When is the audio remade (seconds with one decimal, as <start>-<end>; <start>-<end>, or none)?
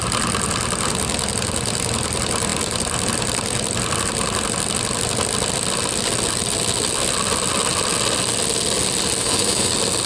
9.2-9.7